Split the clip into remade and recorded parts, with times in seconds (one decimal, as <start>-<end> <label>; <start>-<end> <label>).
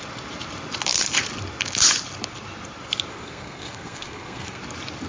0.0-3.1 recorded; 3.1-4.6 remade; 4.6-5.1 recorded